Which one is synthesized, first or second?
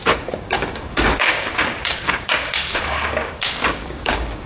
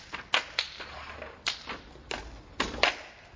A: first